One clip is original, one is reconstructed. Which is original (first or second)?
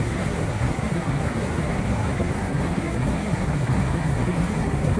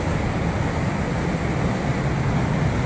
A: second